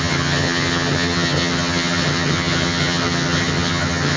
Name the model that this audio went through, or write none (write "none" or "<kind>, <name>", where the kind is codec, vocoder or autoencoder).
vocoder, HiFi-GAN